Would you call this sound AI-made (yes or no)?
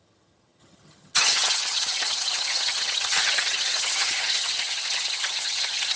yes